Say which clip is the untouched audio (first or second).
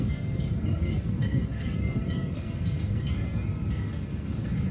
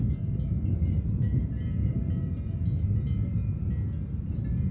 second